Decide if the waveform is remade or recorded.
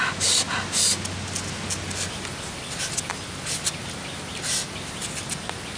recorded